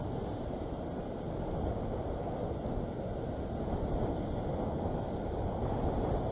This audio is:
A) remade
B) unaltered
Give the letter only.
B